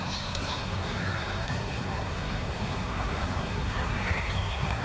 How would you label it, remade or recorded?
remade